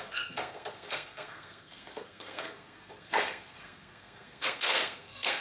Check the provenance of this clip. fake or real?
fake